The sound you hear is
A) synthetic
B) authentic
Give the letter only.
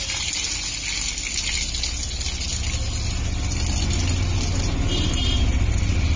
B